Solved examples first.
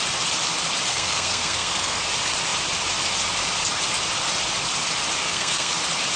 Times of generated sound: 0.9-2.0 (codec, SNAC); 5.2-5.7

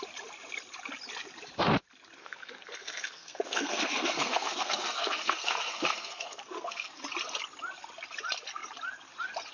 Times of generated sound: 2.2-7.0 (codec, SNAC)